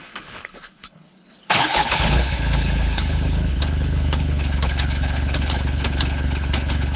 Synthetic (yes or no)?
yes